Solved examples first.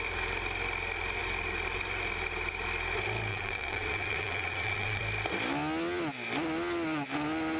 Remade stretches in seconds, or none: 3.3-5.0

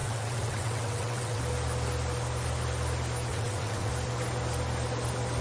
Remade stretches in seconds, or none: 0.0-1.4; 3.3-3.9

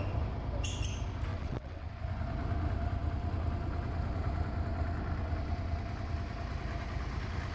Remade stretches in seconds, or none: 1.3-1.9

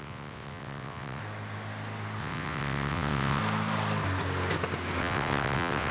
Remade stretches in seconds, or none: 0.0-1.2; 2.2-3.4; 5.0-5.9

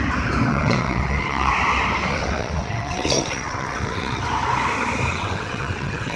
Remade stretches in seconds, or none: 0.5-1.5; 2.1-4.2; 5.1-6.2